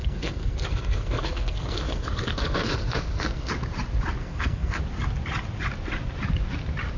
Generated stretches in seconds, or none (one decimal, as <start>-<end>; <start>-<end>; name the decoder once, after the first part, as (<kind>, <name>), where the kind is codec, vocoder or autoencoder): 0.0-3.5 (codec, SNAC); 4.2-4.8